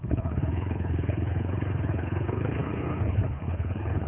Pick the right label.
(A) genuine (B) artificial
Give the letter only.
B